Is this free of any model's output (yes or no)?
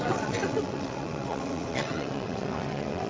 no